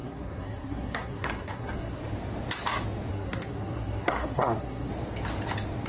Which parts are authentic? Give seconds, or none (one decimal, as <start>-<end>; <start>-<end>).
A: 2.0-3.1; 4.9-5.9